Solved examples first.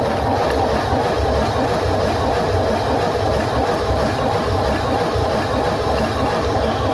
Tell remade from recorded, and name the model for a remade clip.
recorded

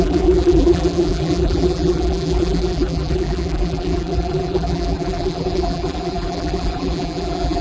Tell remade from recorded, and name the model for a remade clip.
remade, vocoder, BigVGAN v2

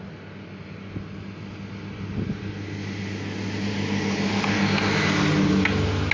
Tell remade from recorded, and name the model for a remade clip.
recorded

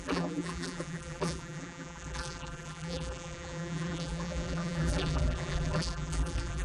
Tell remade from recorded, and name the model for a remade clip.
remade, vocoder, BigVGAN v2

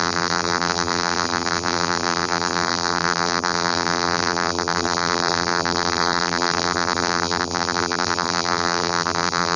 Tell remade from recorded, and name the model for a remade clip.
remade, vocoder, BigVGAN v2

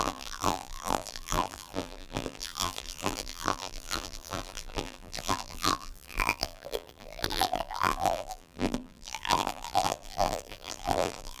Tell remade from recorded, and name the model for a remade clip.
remade, vocoder, BigVGAN v2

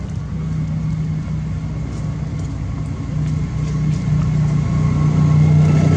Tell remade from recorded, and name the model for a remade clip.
recorded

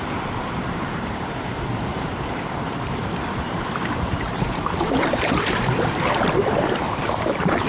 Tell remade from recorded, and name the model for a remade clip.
remade, vocoder, BigVGAN v2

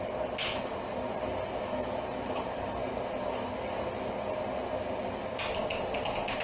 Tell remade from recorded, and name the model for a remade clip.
recorded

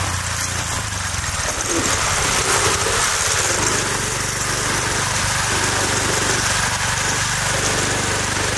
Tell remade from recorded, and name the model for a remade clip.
recorded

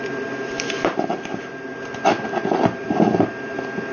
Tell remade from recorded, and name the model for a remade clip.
recorded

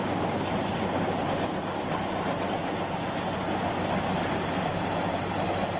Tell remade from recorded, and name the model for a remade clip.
recorded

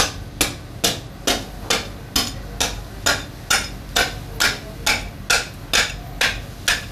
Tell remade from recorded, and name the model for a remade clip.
recorded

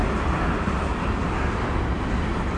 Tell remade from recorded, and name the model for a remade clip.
recorded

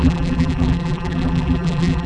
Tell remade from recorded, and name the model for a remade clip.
remade, vocoder, BigVGAN v2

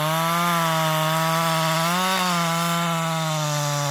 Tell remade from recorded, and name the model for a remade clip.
recorded